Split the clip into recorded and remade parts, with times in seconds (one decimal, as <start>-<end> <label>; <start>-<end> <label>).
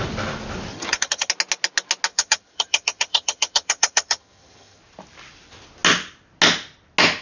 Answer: 0.0-0.7 recorded; 0.7-1.3 remade; 1.3-2.1 recorded; 2.1-4.8 remade; 4.8-7.2 recorded